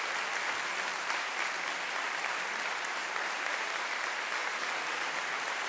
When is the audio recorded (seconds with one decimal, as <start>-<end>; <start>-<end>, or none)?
0.0-0.9; 1.5-3.0; 3.9-4.4; 5.1-5.7